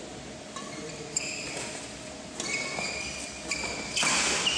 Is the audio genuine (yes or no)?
yes